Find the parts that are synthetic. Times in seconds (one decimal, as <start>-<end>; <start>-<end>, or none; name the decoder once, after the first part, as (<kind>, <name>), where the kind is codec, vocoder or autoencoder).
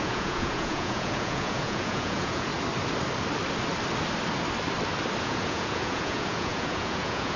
0.0-2.5 (vocoder, Vocos); 5.2-7.4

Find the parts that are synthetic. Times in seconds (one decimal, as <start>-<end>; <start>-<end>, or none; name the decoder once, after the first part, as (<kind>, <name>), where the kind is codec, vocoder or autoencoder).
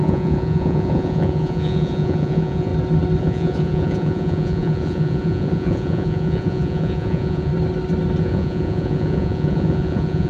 0.0-2.7 (vocoder, Vocos); 3.2-7.5; 8.2-10.3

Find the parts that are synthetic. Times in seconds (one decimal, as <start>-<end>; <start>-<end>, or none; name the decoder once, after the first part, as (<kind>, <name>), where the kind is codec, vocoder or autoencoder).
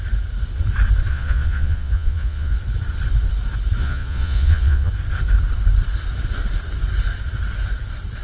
1.1-2.6 (vocoder, Vocos); 3.8-4.9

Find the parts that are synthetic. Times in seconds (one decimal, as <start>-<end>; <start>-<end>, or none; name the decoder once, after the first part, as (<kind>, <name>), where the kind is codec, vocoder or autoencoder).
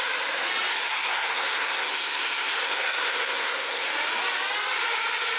0.7-3.9 (codec, SNAC)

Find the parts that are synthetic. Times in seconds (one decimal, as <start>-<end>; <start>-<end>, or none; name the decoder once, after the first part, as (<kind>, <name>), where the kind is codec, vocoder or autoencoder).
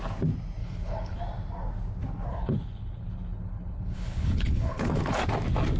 0.6-1.2 (codec, HILCodec); 2.3-5.0